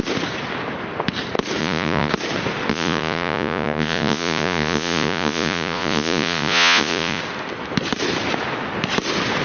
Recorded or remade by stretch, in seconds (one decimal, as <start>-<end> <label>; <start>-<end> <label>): 0.0-1.6 recorded; 1.6-2.1 remade; 2.1-2.7 recorded; 2.7-7.2 remade; 7.2-9.4 recorded